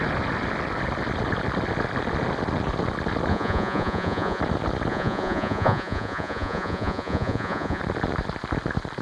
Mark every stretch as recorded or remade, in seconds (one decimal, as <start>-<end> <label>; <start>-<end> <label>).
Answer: 0.0-3.3 recorded; 3.3-4.4 remade; 4.4-4.9 recorded; 4.9-7.8 remade; 7.8-9.0 recorded